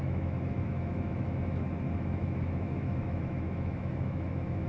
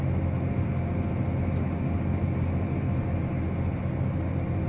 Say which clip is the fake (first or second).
first